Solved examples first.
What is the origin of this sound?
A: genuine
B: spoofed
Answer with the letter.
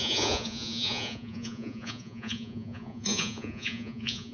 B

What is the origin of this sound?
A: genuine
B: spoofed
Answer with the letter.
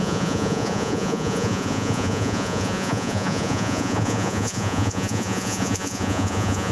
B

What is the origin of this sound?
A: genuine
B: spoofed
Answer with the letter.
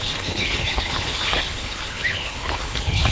B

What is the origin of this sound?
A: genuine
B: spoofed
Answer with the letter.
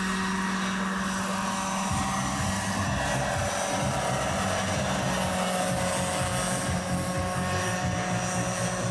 A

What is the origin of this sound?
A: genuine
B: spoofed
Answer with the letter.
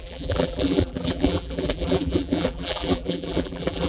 B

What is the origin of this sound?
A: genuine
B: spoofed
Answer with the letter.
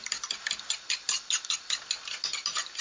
A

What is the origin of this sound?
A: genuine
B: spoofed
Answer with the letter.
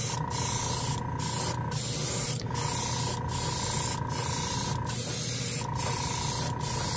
A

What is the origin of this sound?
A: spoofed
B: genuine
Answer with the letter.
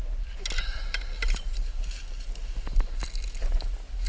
B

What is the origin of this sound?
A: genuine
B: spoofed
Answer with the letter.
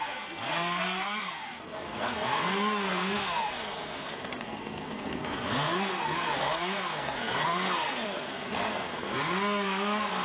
B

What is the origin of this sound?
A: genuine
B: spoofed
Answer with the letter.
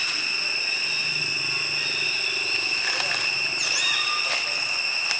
A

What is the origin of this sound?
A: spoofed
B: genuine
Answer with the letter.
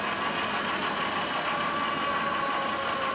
B